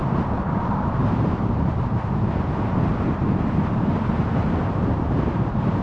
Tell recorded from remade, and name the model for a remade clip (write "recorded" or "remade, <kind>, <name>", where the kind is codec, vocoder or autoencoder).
remade, vocoder, BigVGAN v2